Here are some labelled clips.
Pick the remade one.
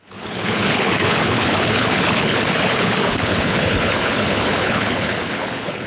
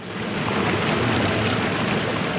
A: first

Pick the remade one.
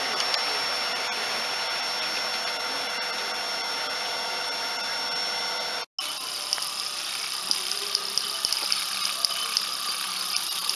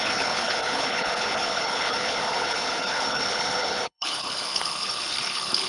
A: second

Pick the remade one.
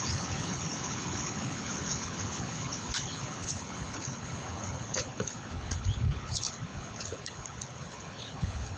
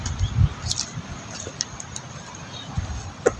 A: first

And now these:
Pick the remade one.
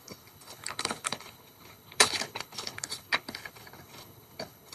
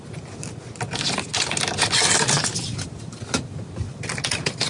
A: first